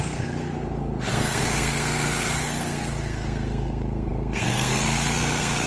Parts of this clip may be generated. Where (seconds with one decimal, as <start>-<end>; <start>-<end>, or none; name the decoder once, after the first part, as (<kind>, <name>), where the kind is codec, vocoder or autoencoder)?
0.0-5.7 (codec, SNAC)